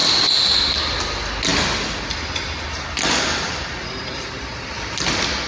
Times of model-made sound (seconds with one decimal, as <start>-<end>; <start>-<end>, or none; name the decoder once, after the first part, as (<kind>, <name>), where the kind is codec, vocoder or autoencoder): none